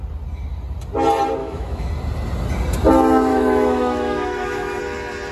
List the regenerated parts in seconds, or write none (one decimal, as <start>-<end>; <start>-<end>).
1.4-1.9; 3.3-4.8